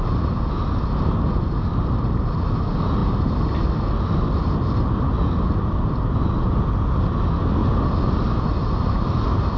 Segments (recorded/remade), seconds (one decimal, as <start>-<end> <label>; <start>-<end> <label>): 0.0-9.6 recorded

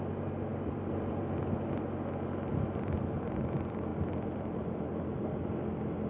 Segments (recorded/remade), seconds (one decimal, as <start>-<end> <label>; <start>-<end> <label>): 0.0-0.5 recorded; 0.5-1.5 remade; 1.5-3.9 recorded; 3.9-5.4 remade; 5.4-6.1 recorded

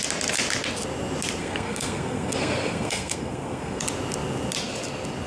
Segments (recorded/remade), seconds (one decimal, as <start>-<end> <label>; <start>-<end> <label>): 0.0-1.4 recorded; 1.4-3.8 remade; 3.8-5.3 recorded